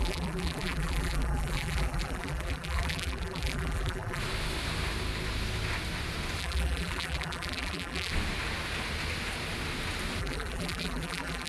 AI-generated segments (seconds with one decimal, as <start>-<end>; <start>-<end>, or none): 0.0-4.2; 6.4-8.1; 10.2-11.5